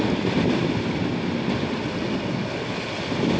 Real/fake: real